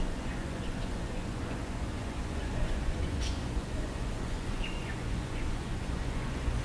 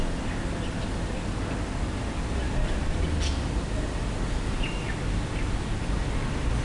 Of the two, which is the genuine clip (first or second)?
second